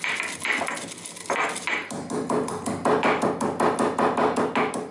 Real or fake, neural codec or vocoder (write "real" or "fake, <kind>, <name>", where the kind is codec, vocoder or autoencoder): real